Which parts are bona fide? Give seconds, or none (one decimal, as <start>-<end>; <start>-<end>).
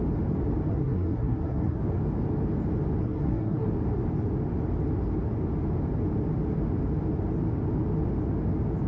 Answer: 0.0-0.7; 1.8-3.0; 3.7-8.9